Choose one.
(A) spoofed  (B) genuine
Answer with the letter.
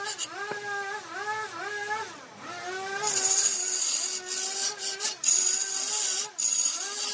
B